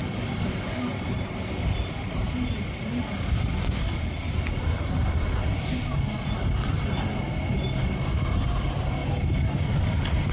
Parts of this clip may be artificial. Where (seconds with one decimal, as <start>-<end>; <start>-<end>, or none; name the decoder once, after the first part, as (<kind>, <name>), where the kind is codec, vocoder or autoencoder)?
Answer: none